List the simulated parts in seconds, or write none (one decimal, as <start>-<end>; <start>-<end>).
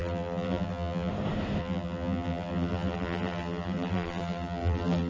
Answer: 0.0-1.1; 1.6-5.1